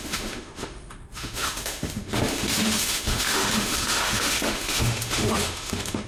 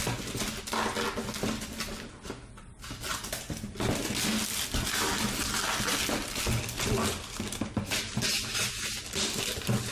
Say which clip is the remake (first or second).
first